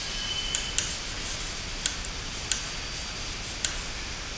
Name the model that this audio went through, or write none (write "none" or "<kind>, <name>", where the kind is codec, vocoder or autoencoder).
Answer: none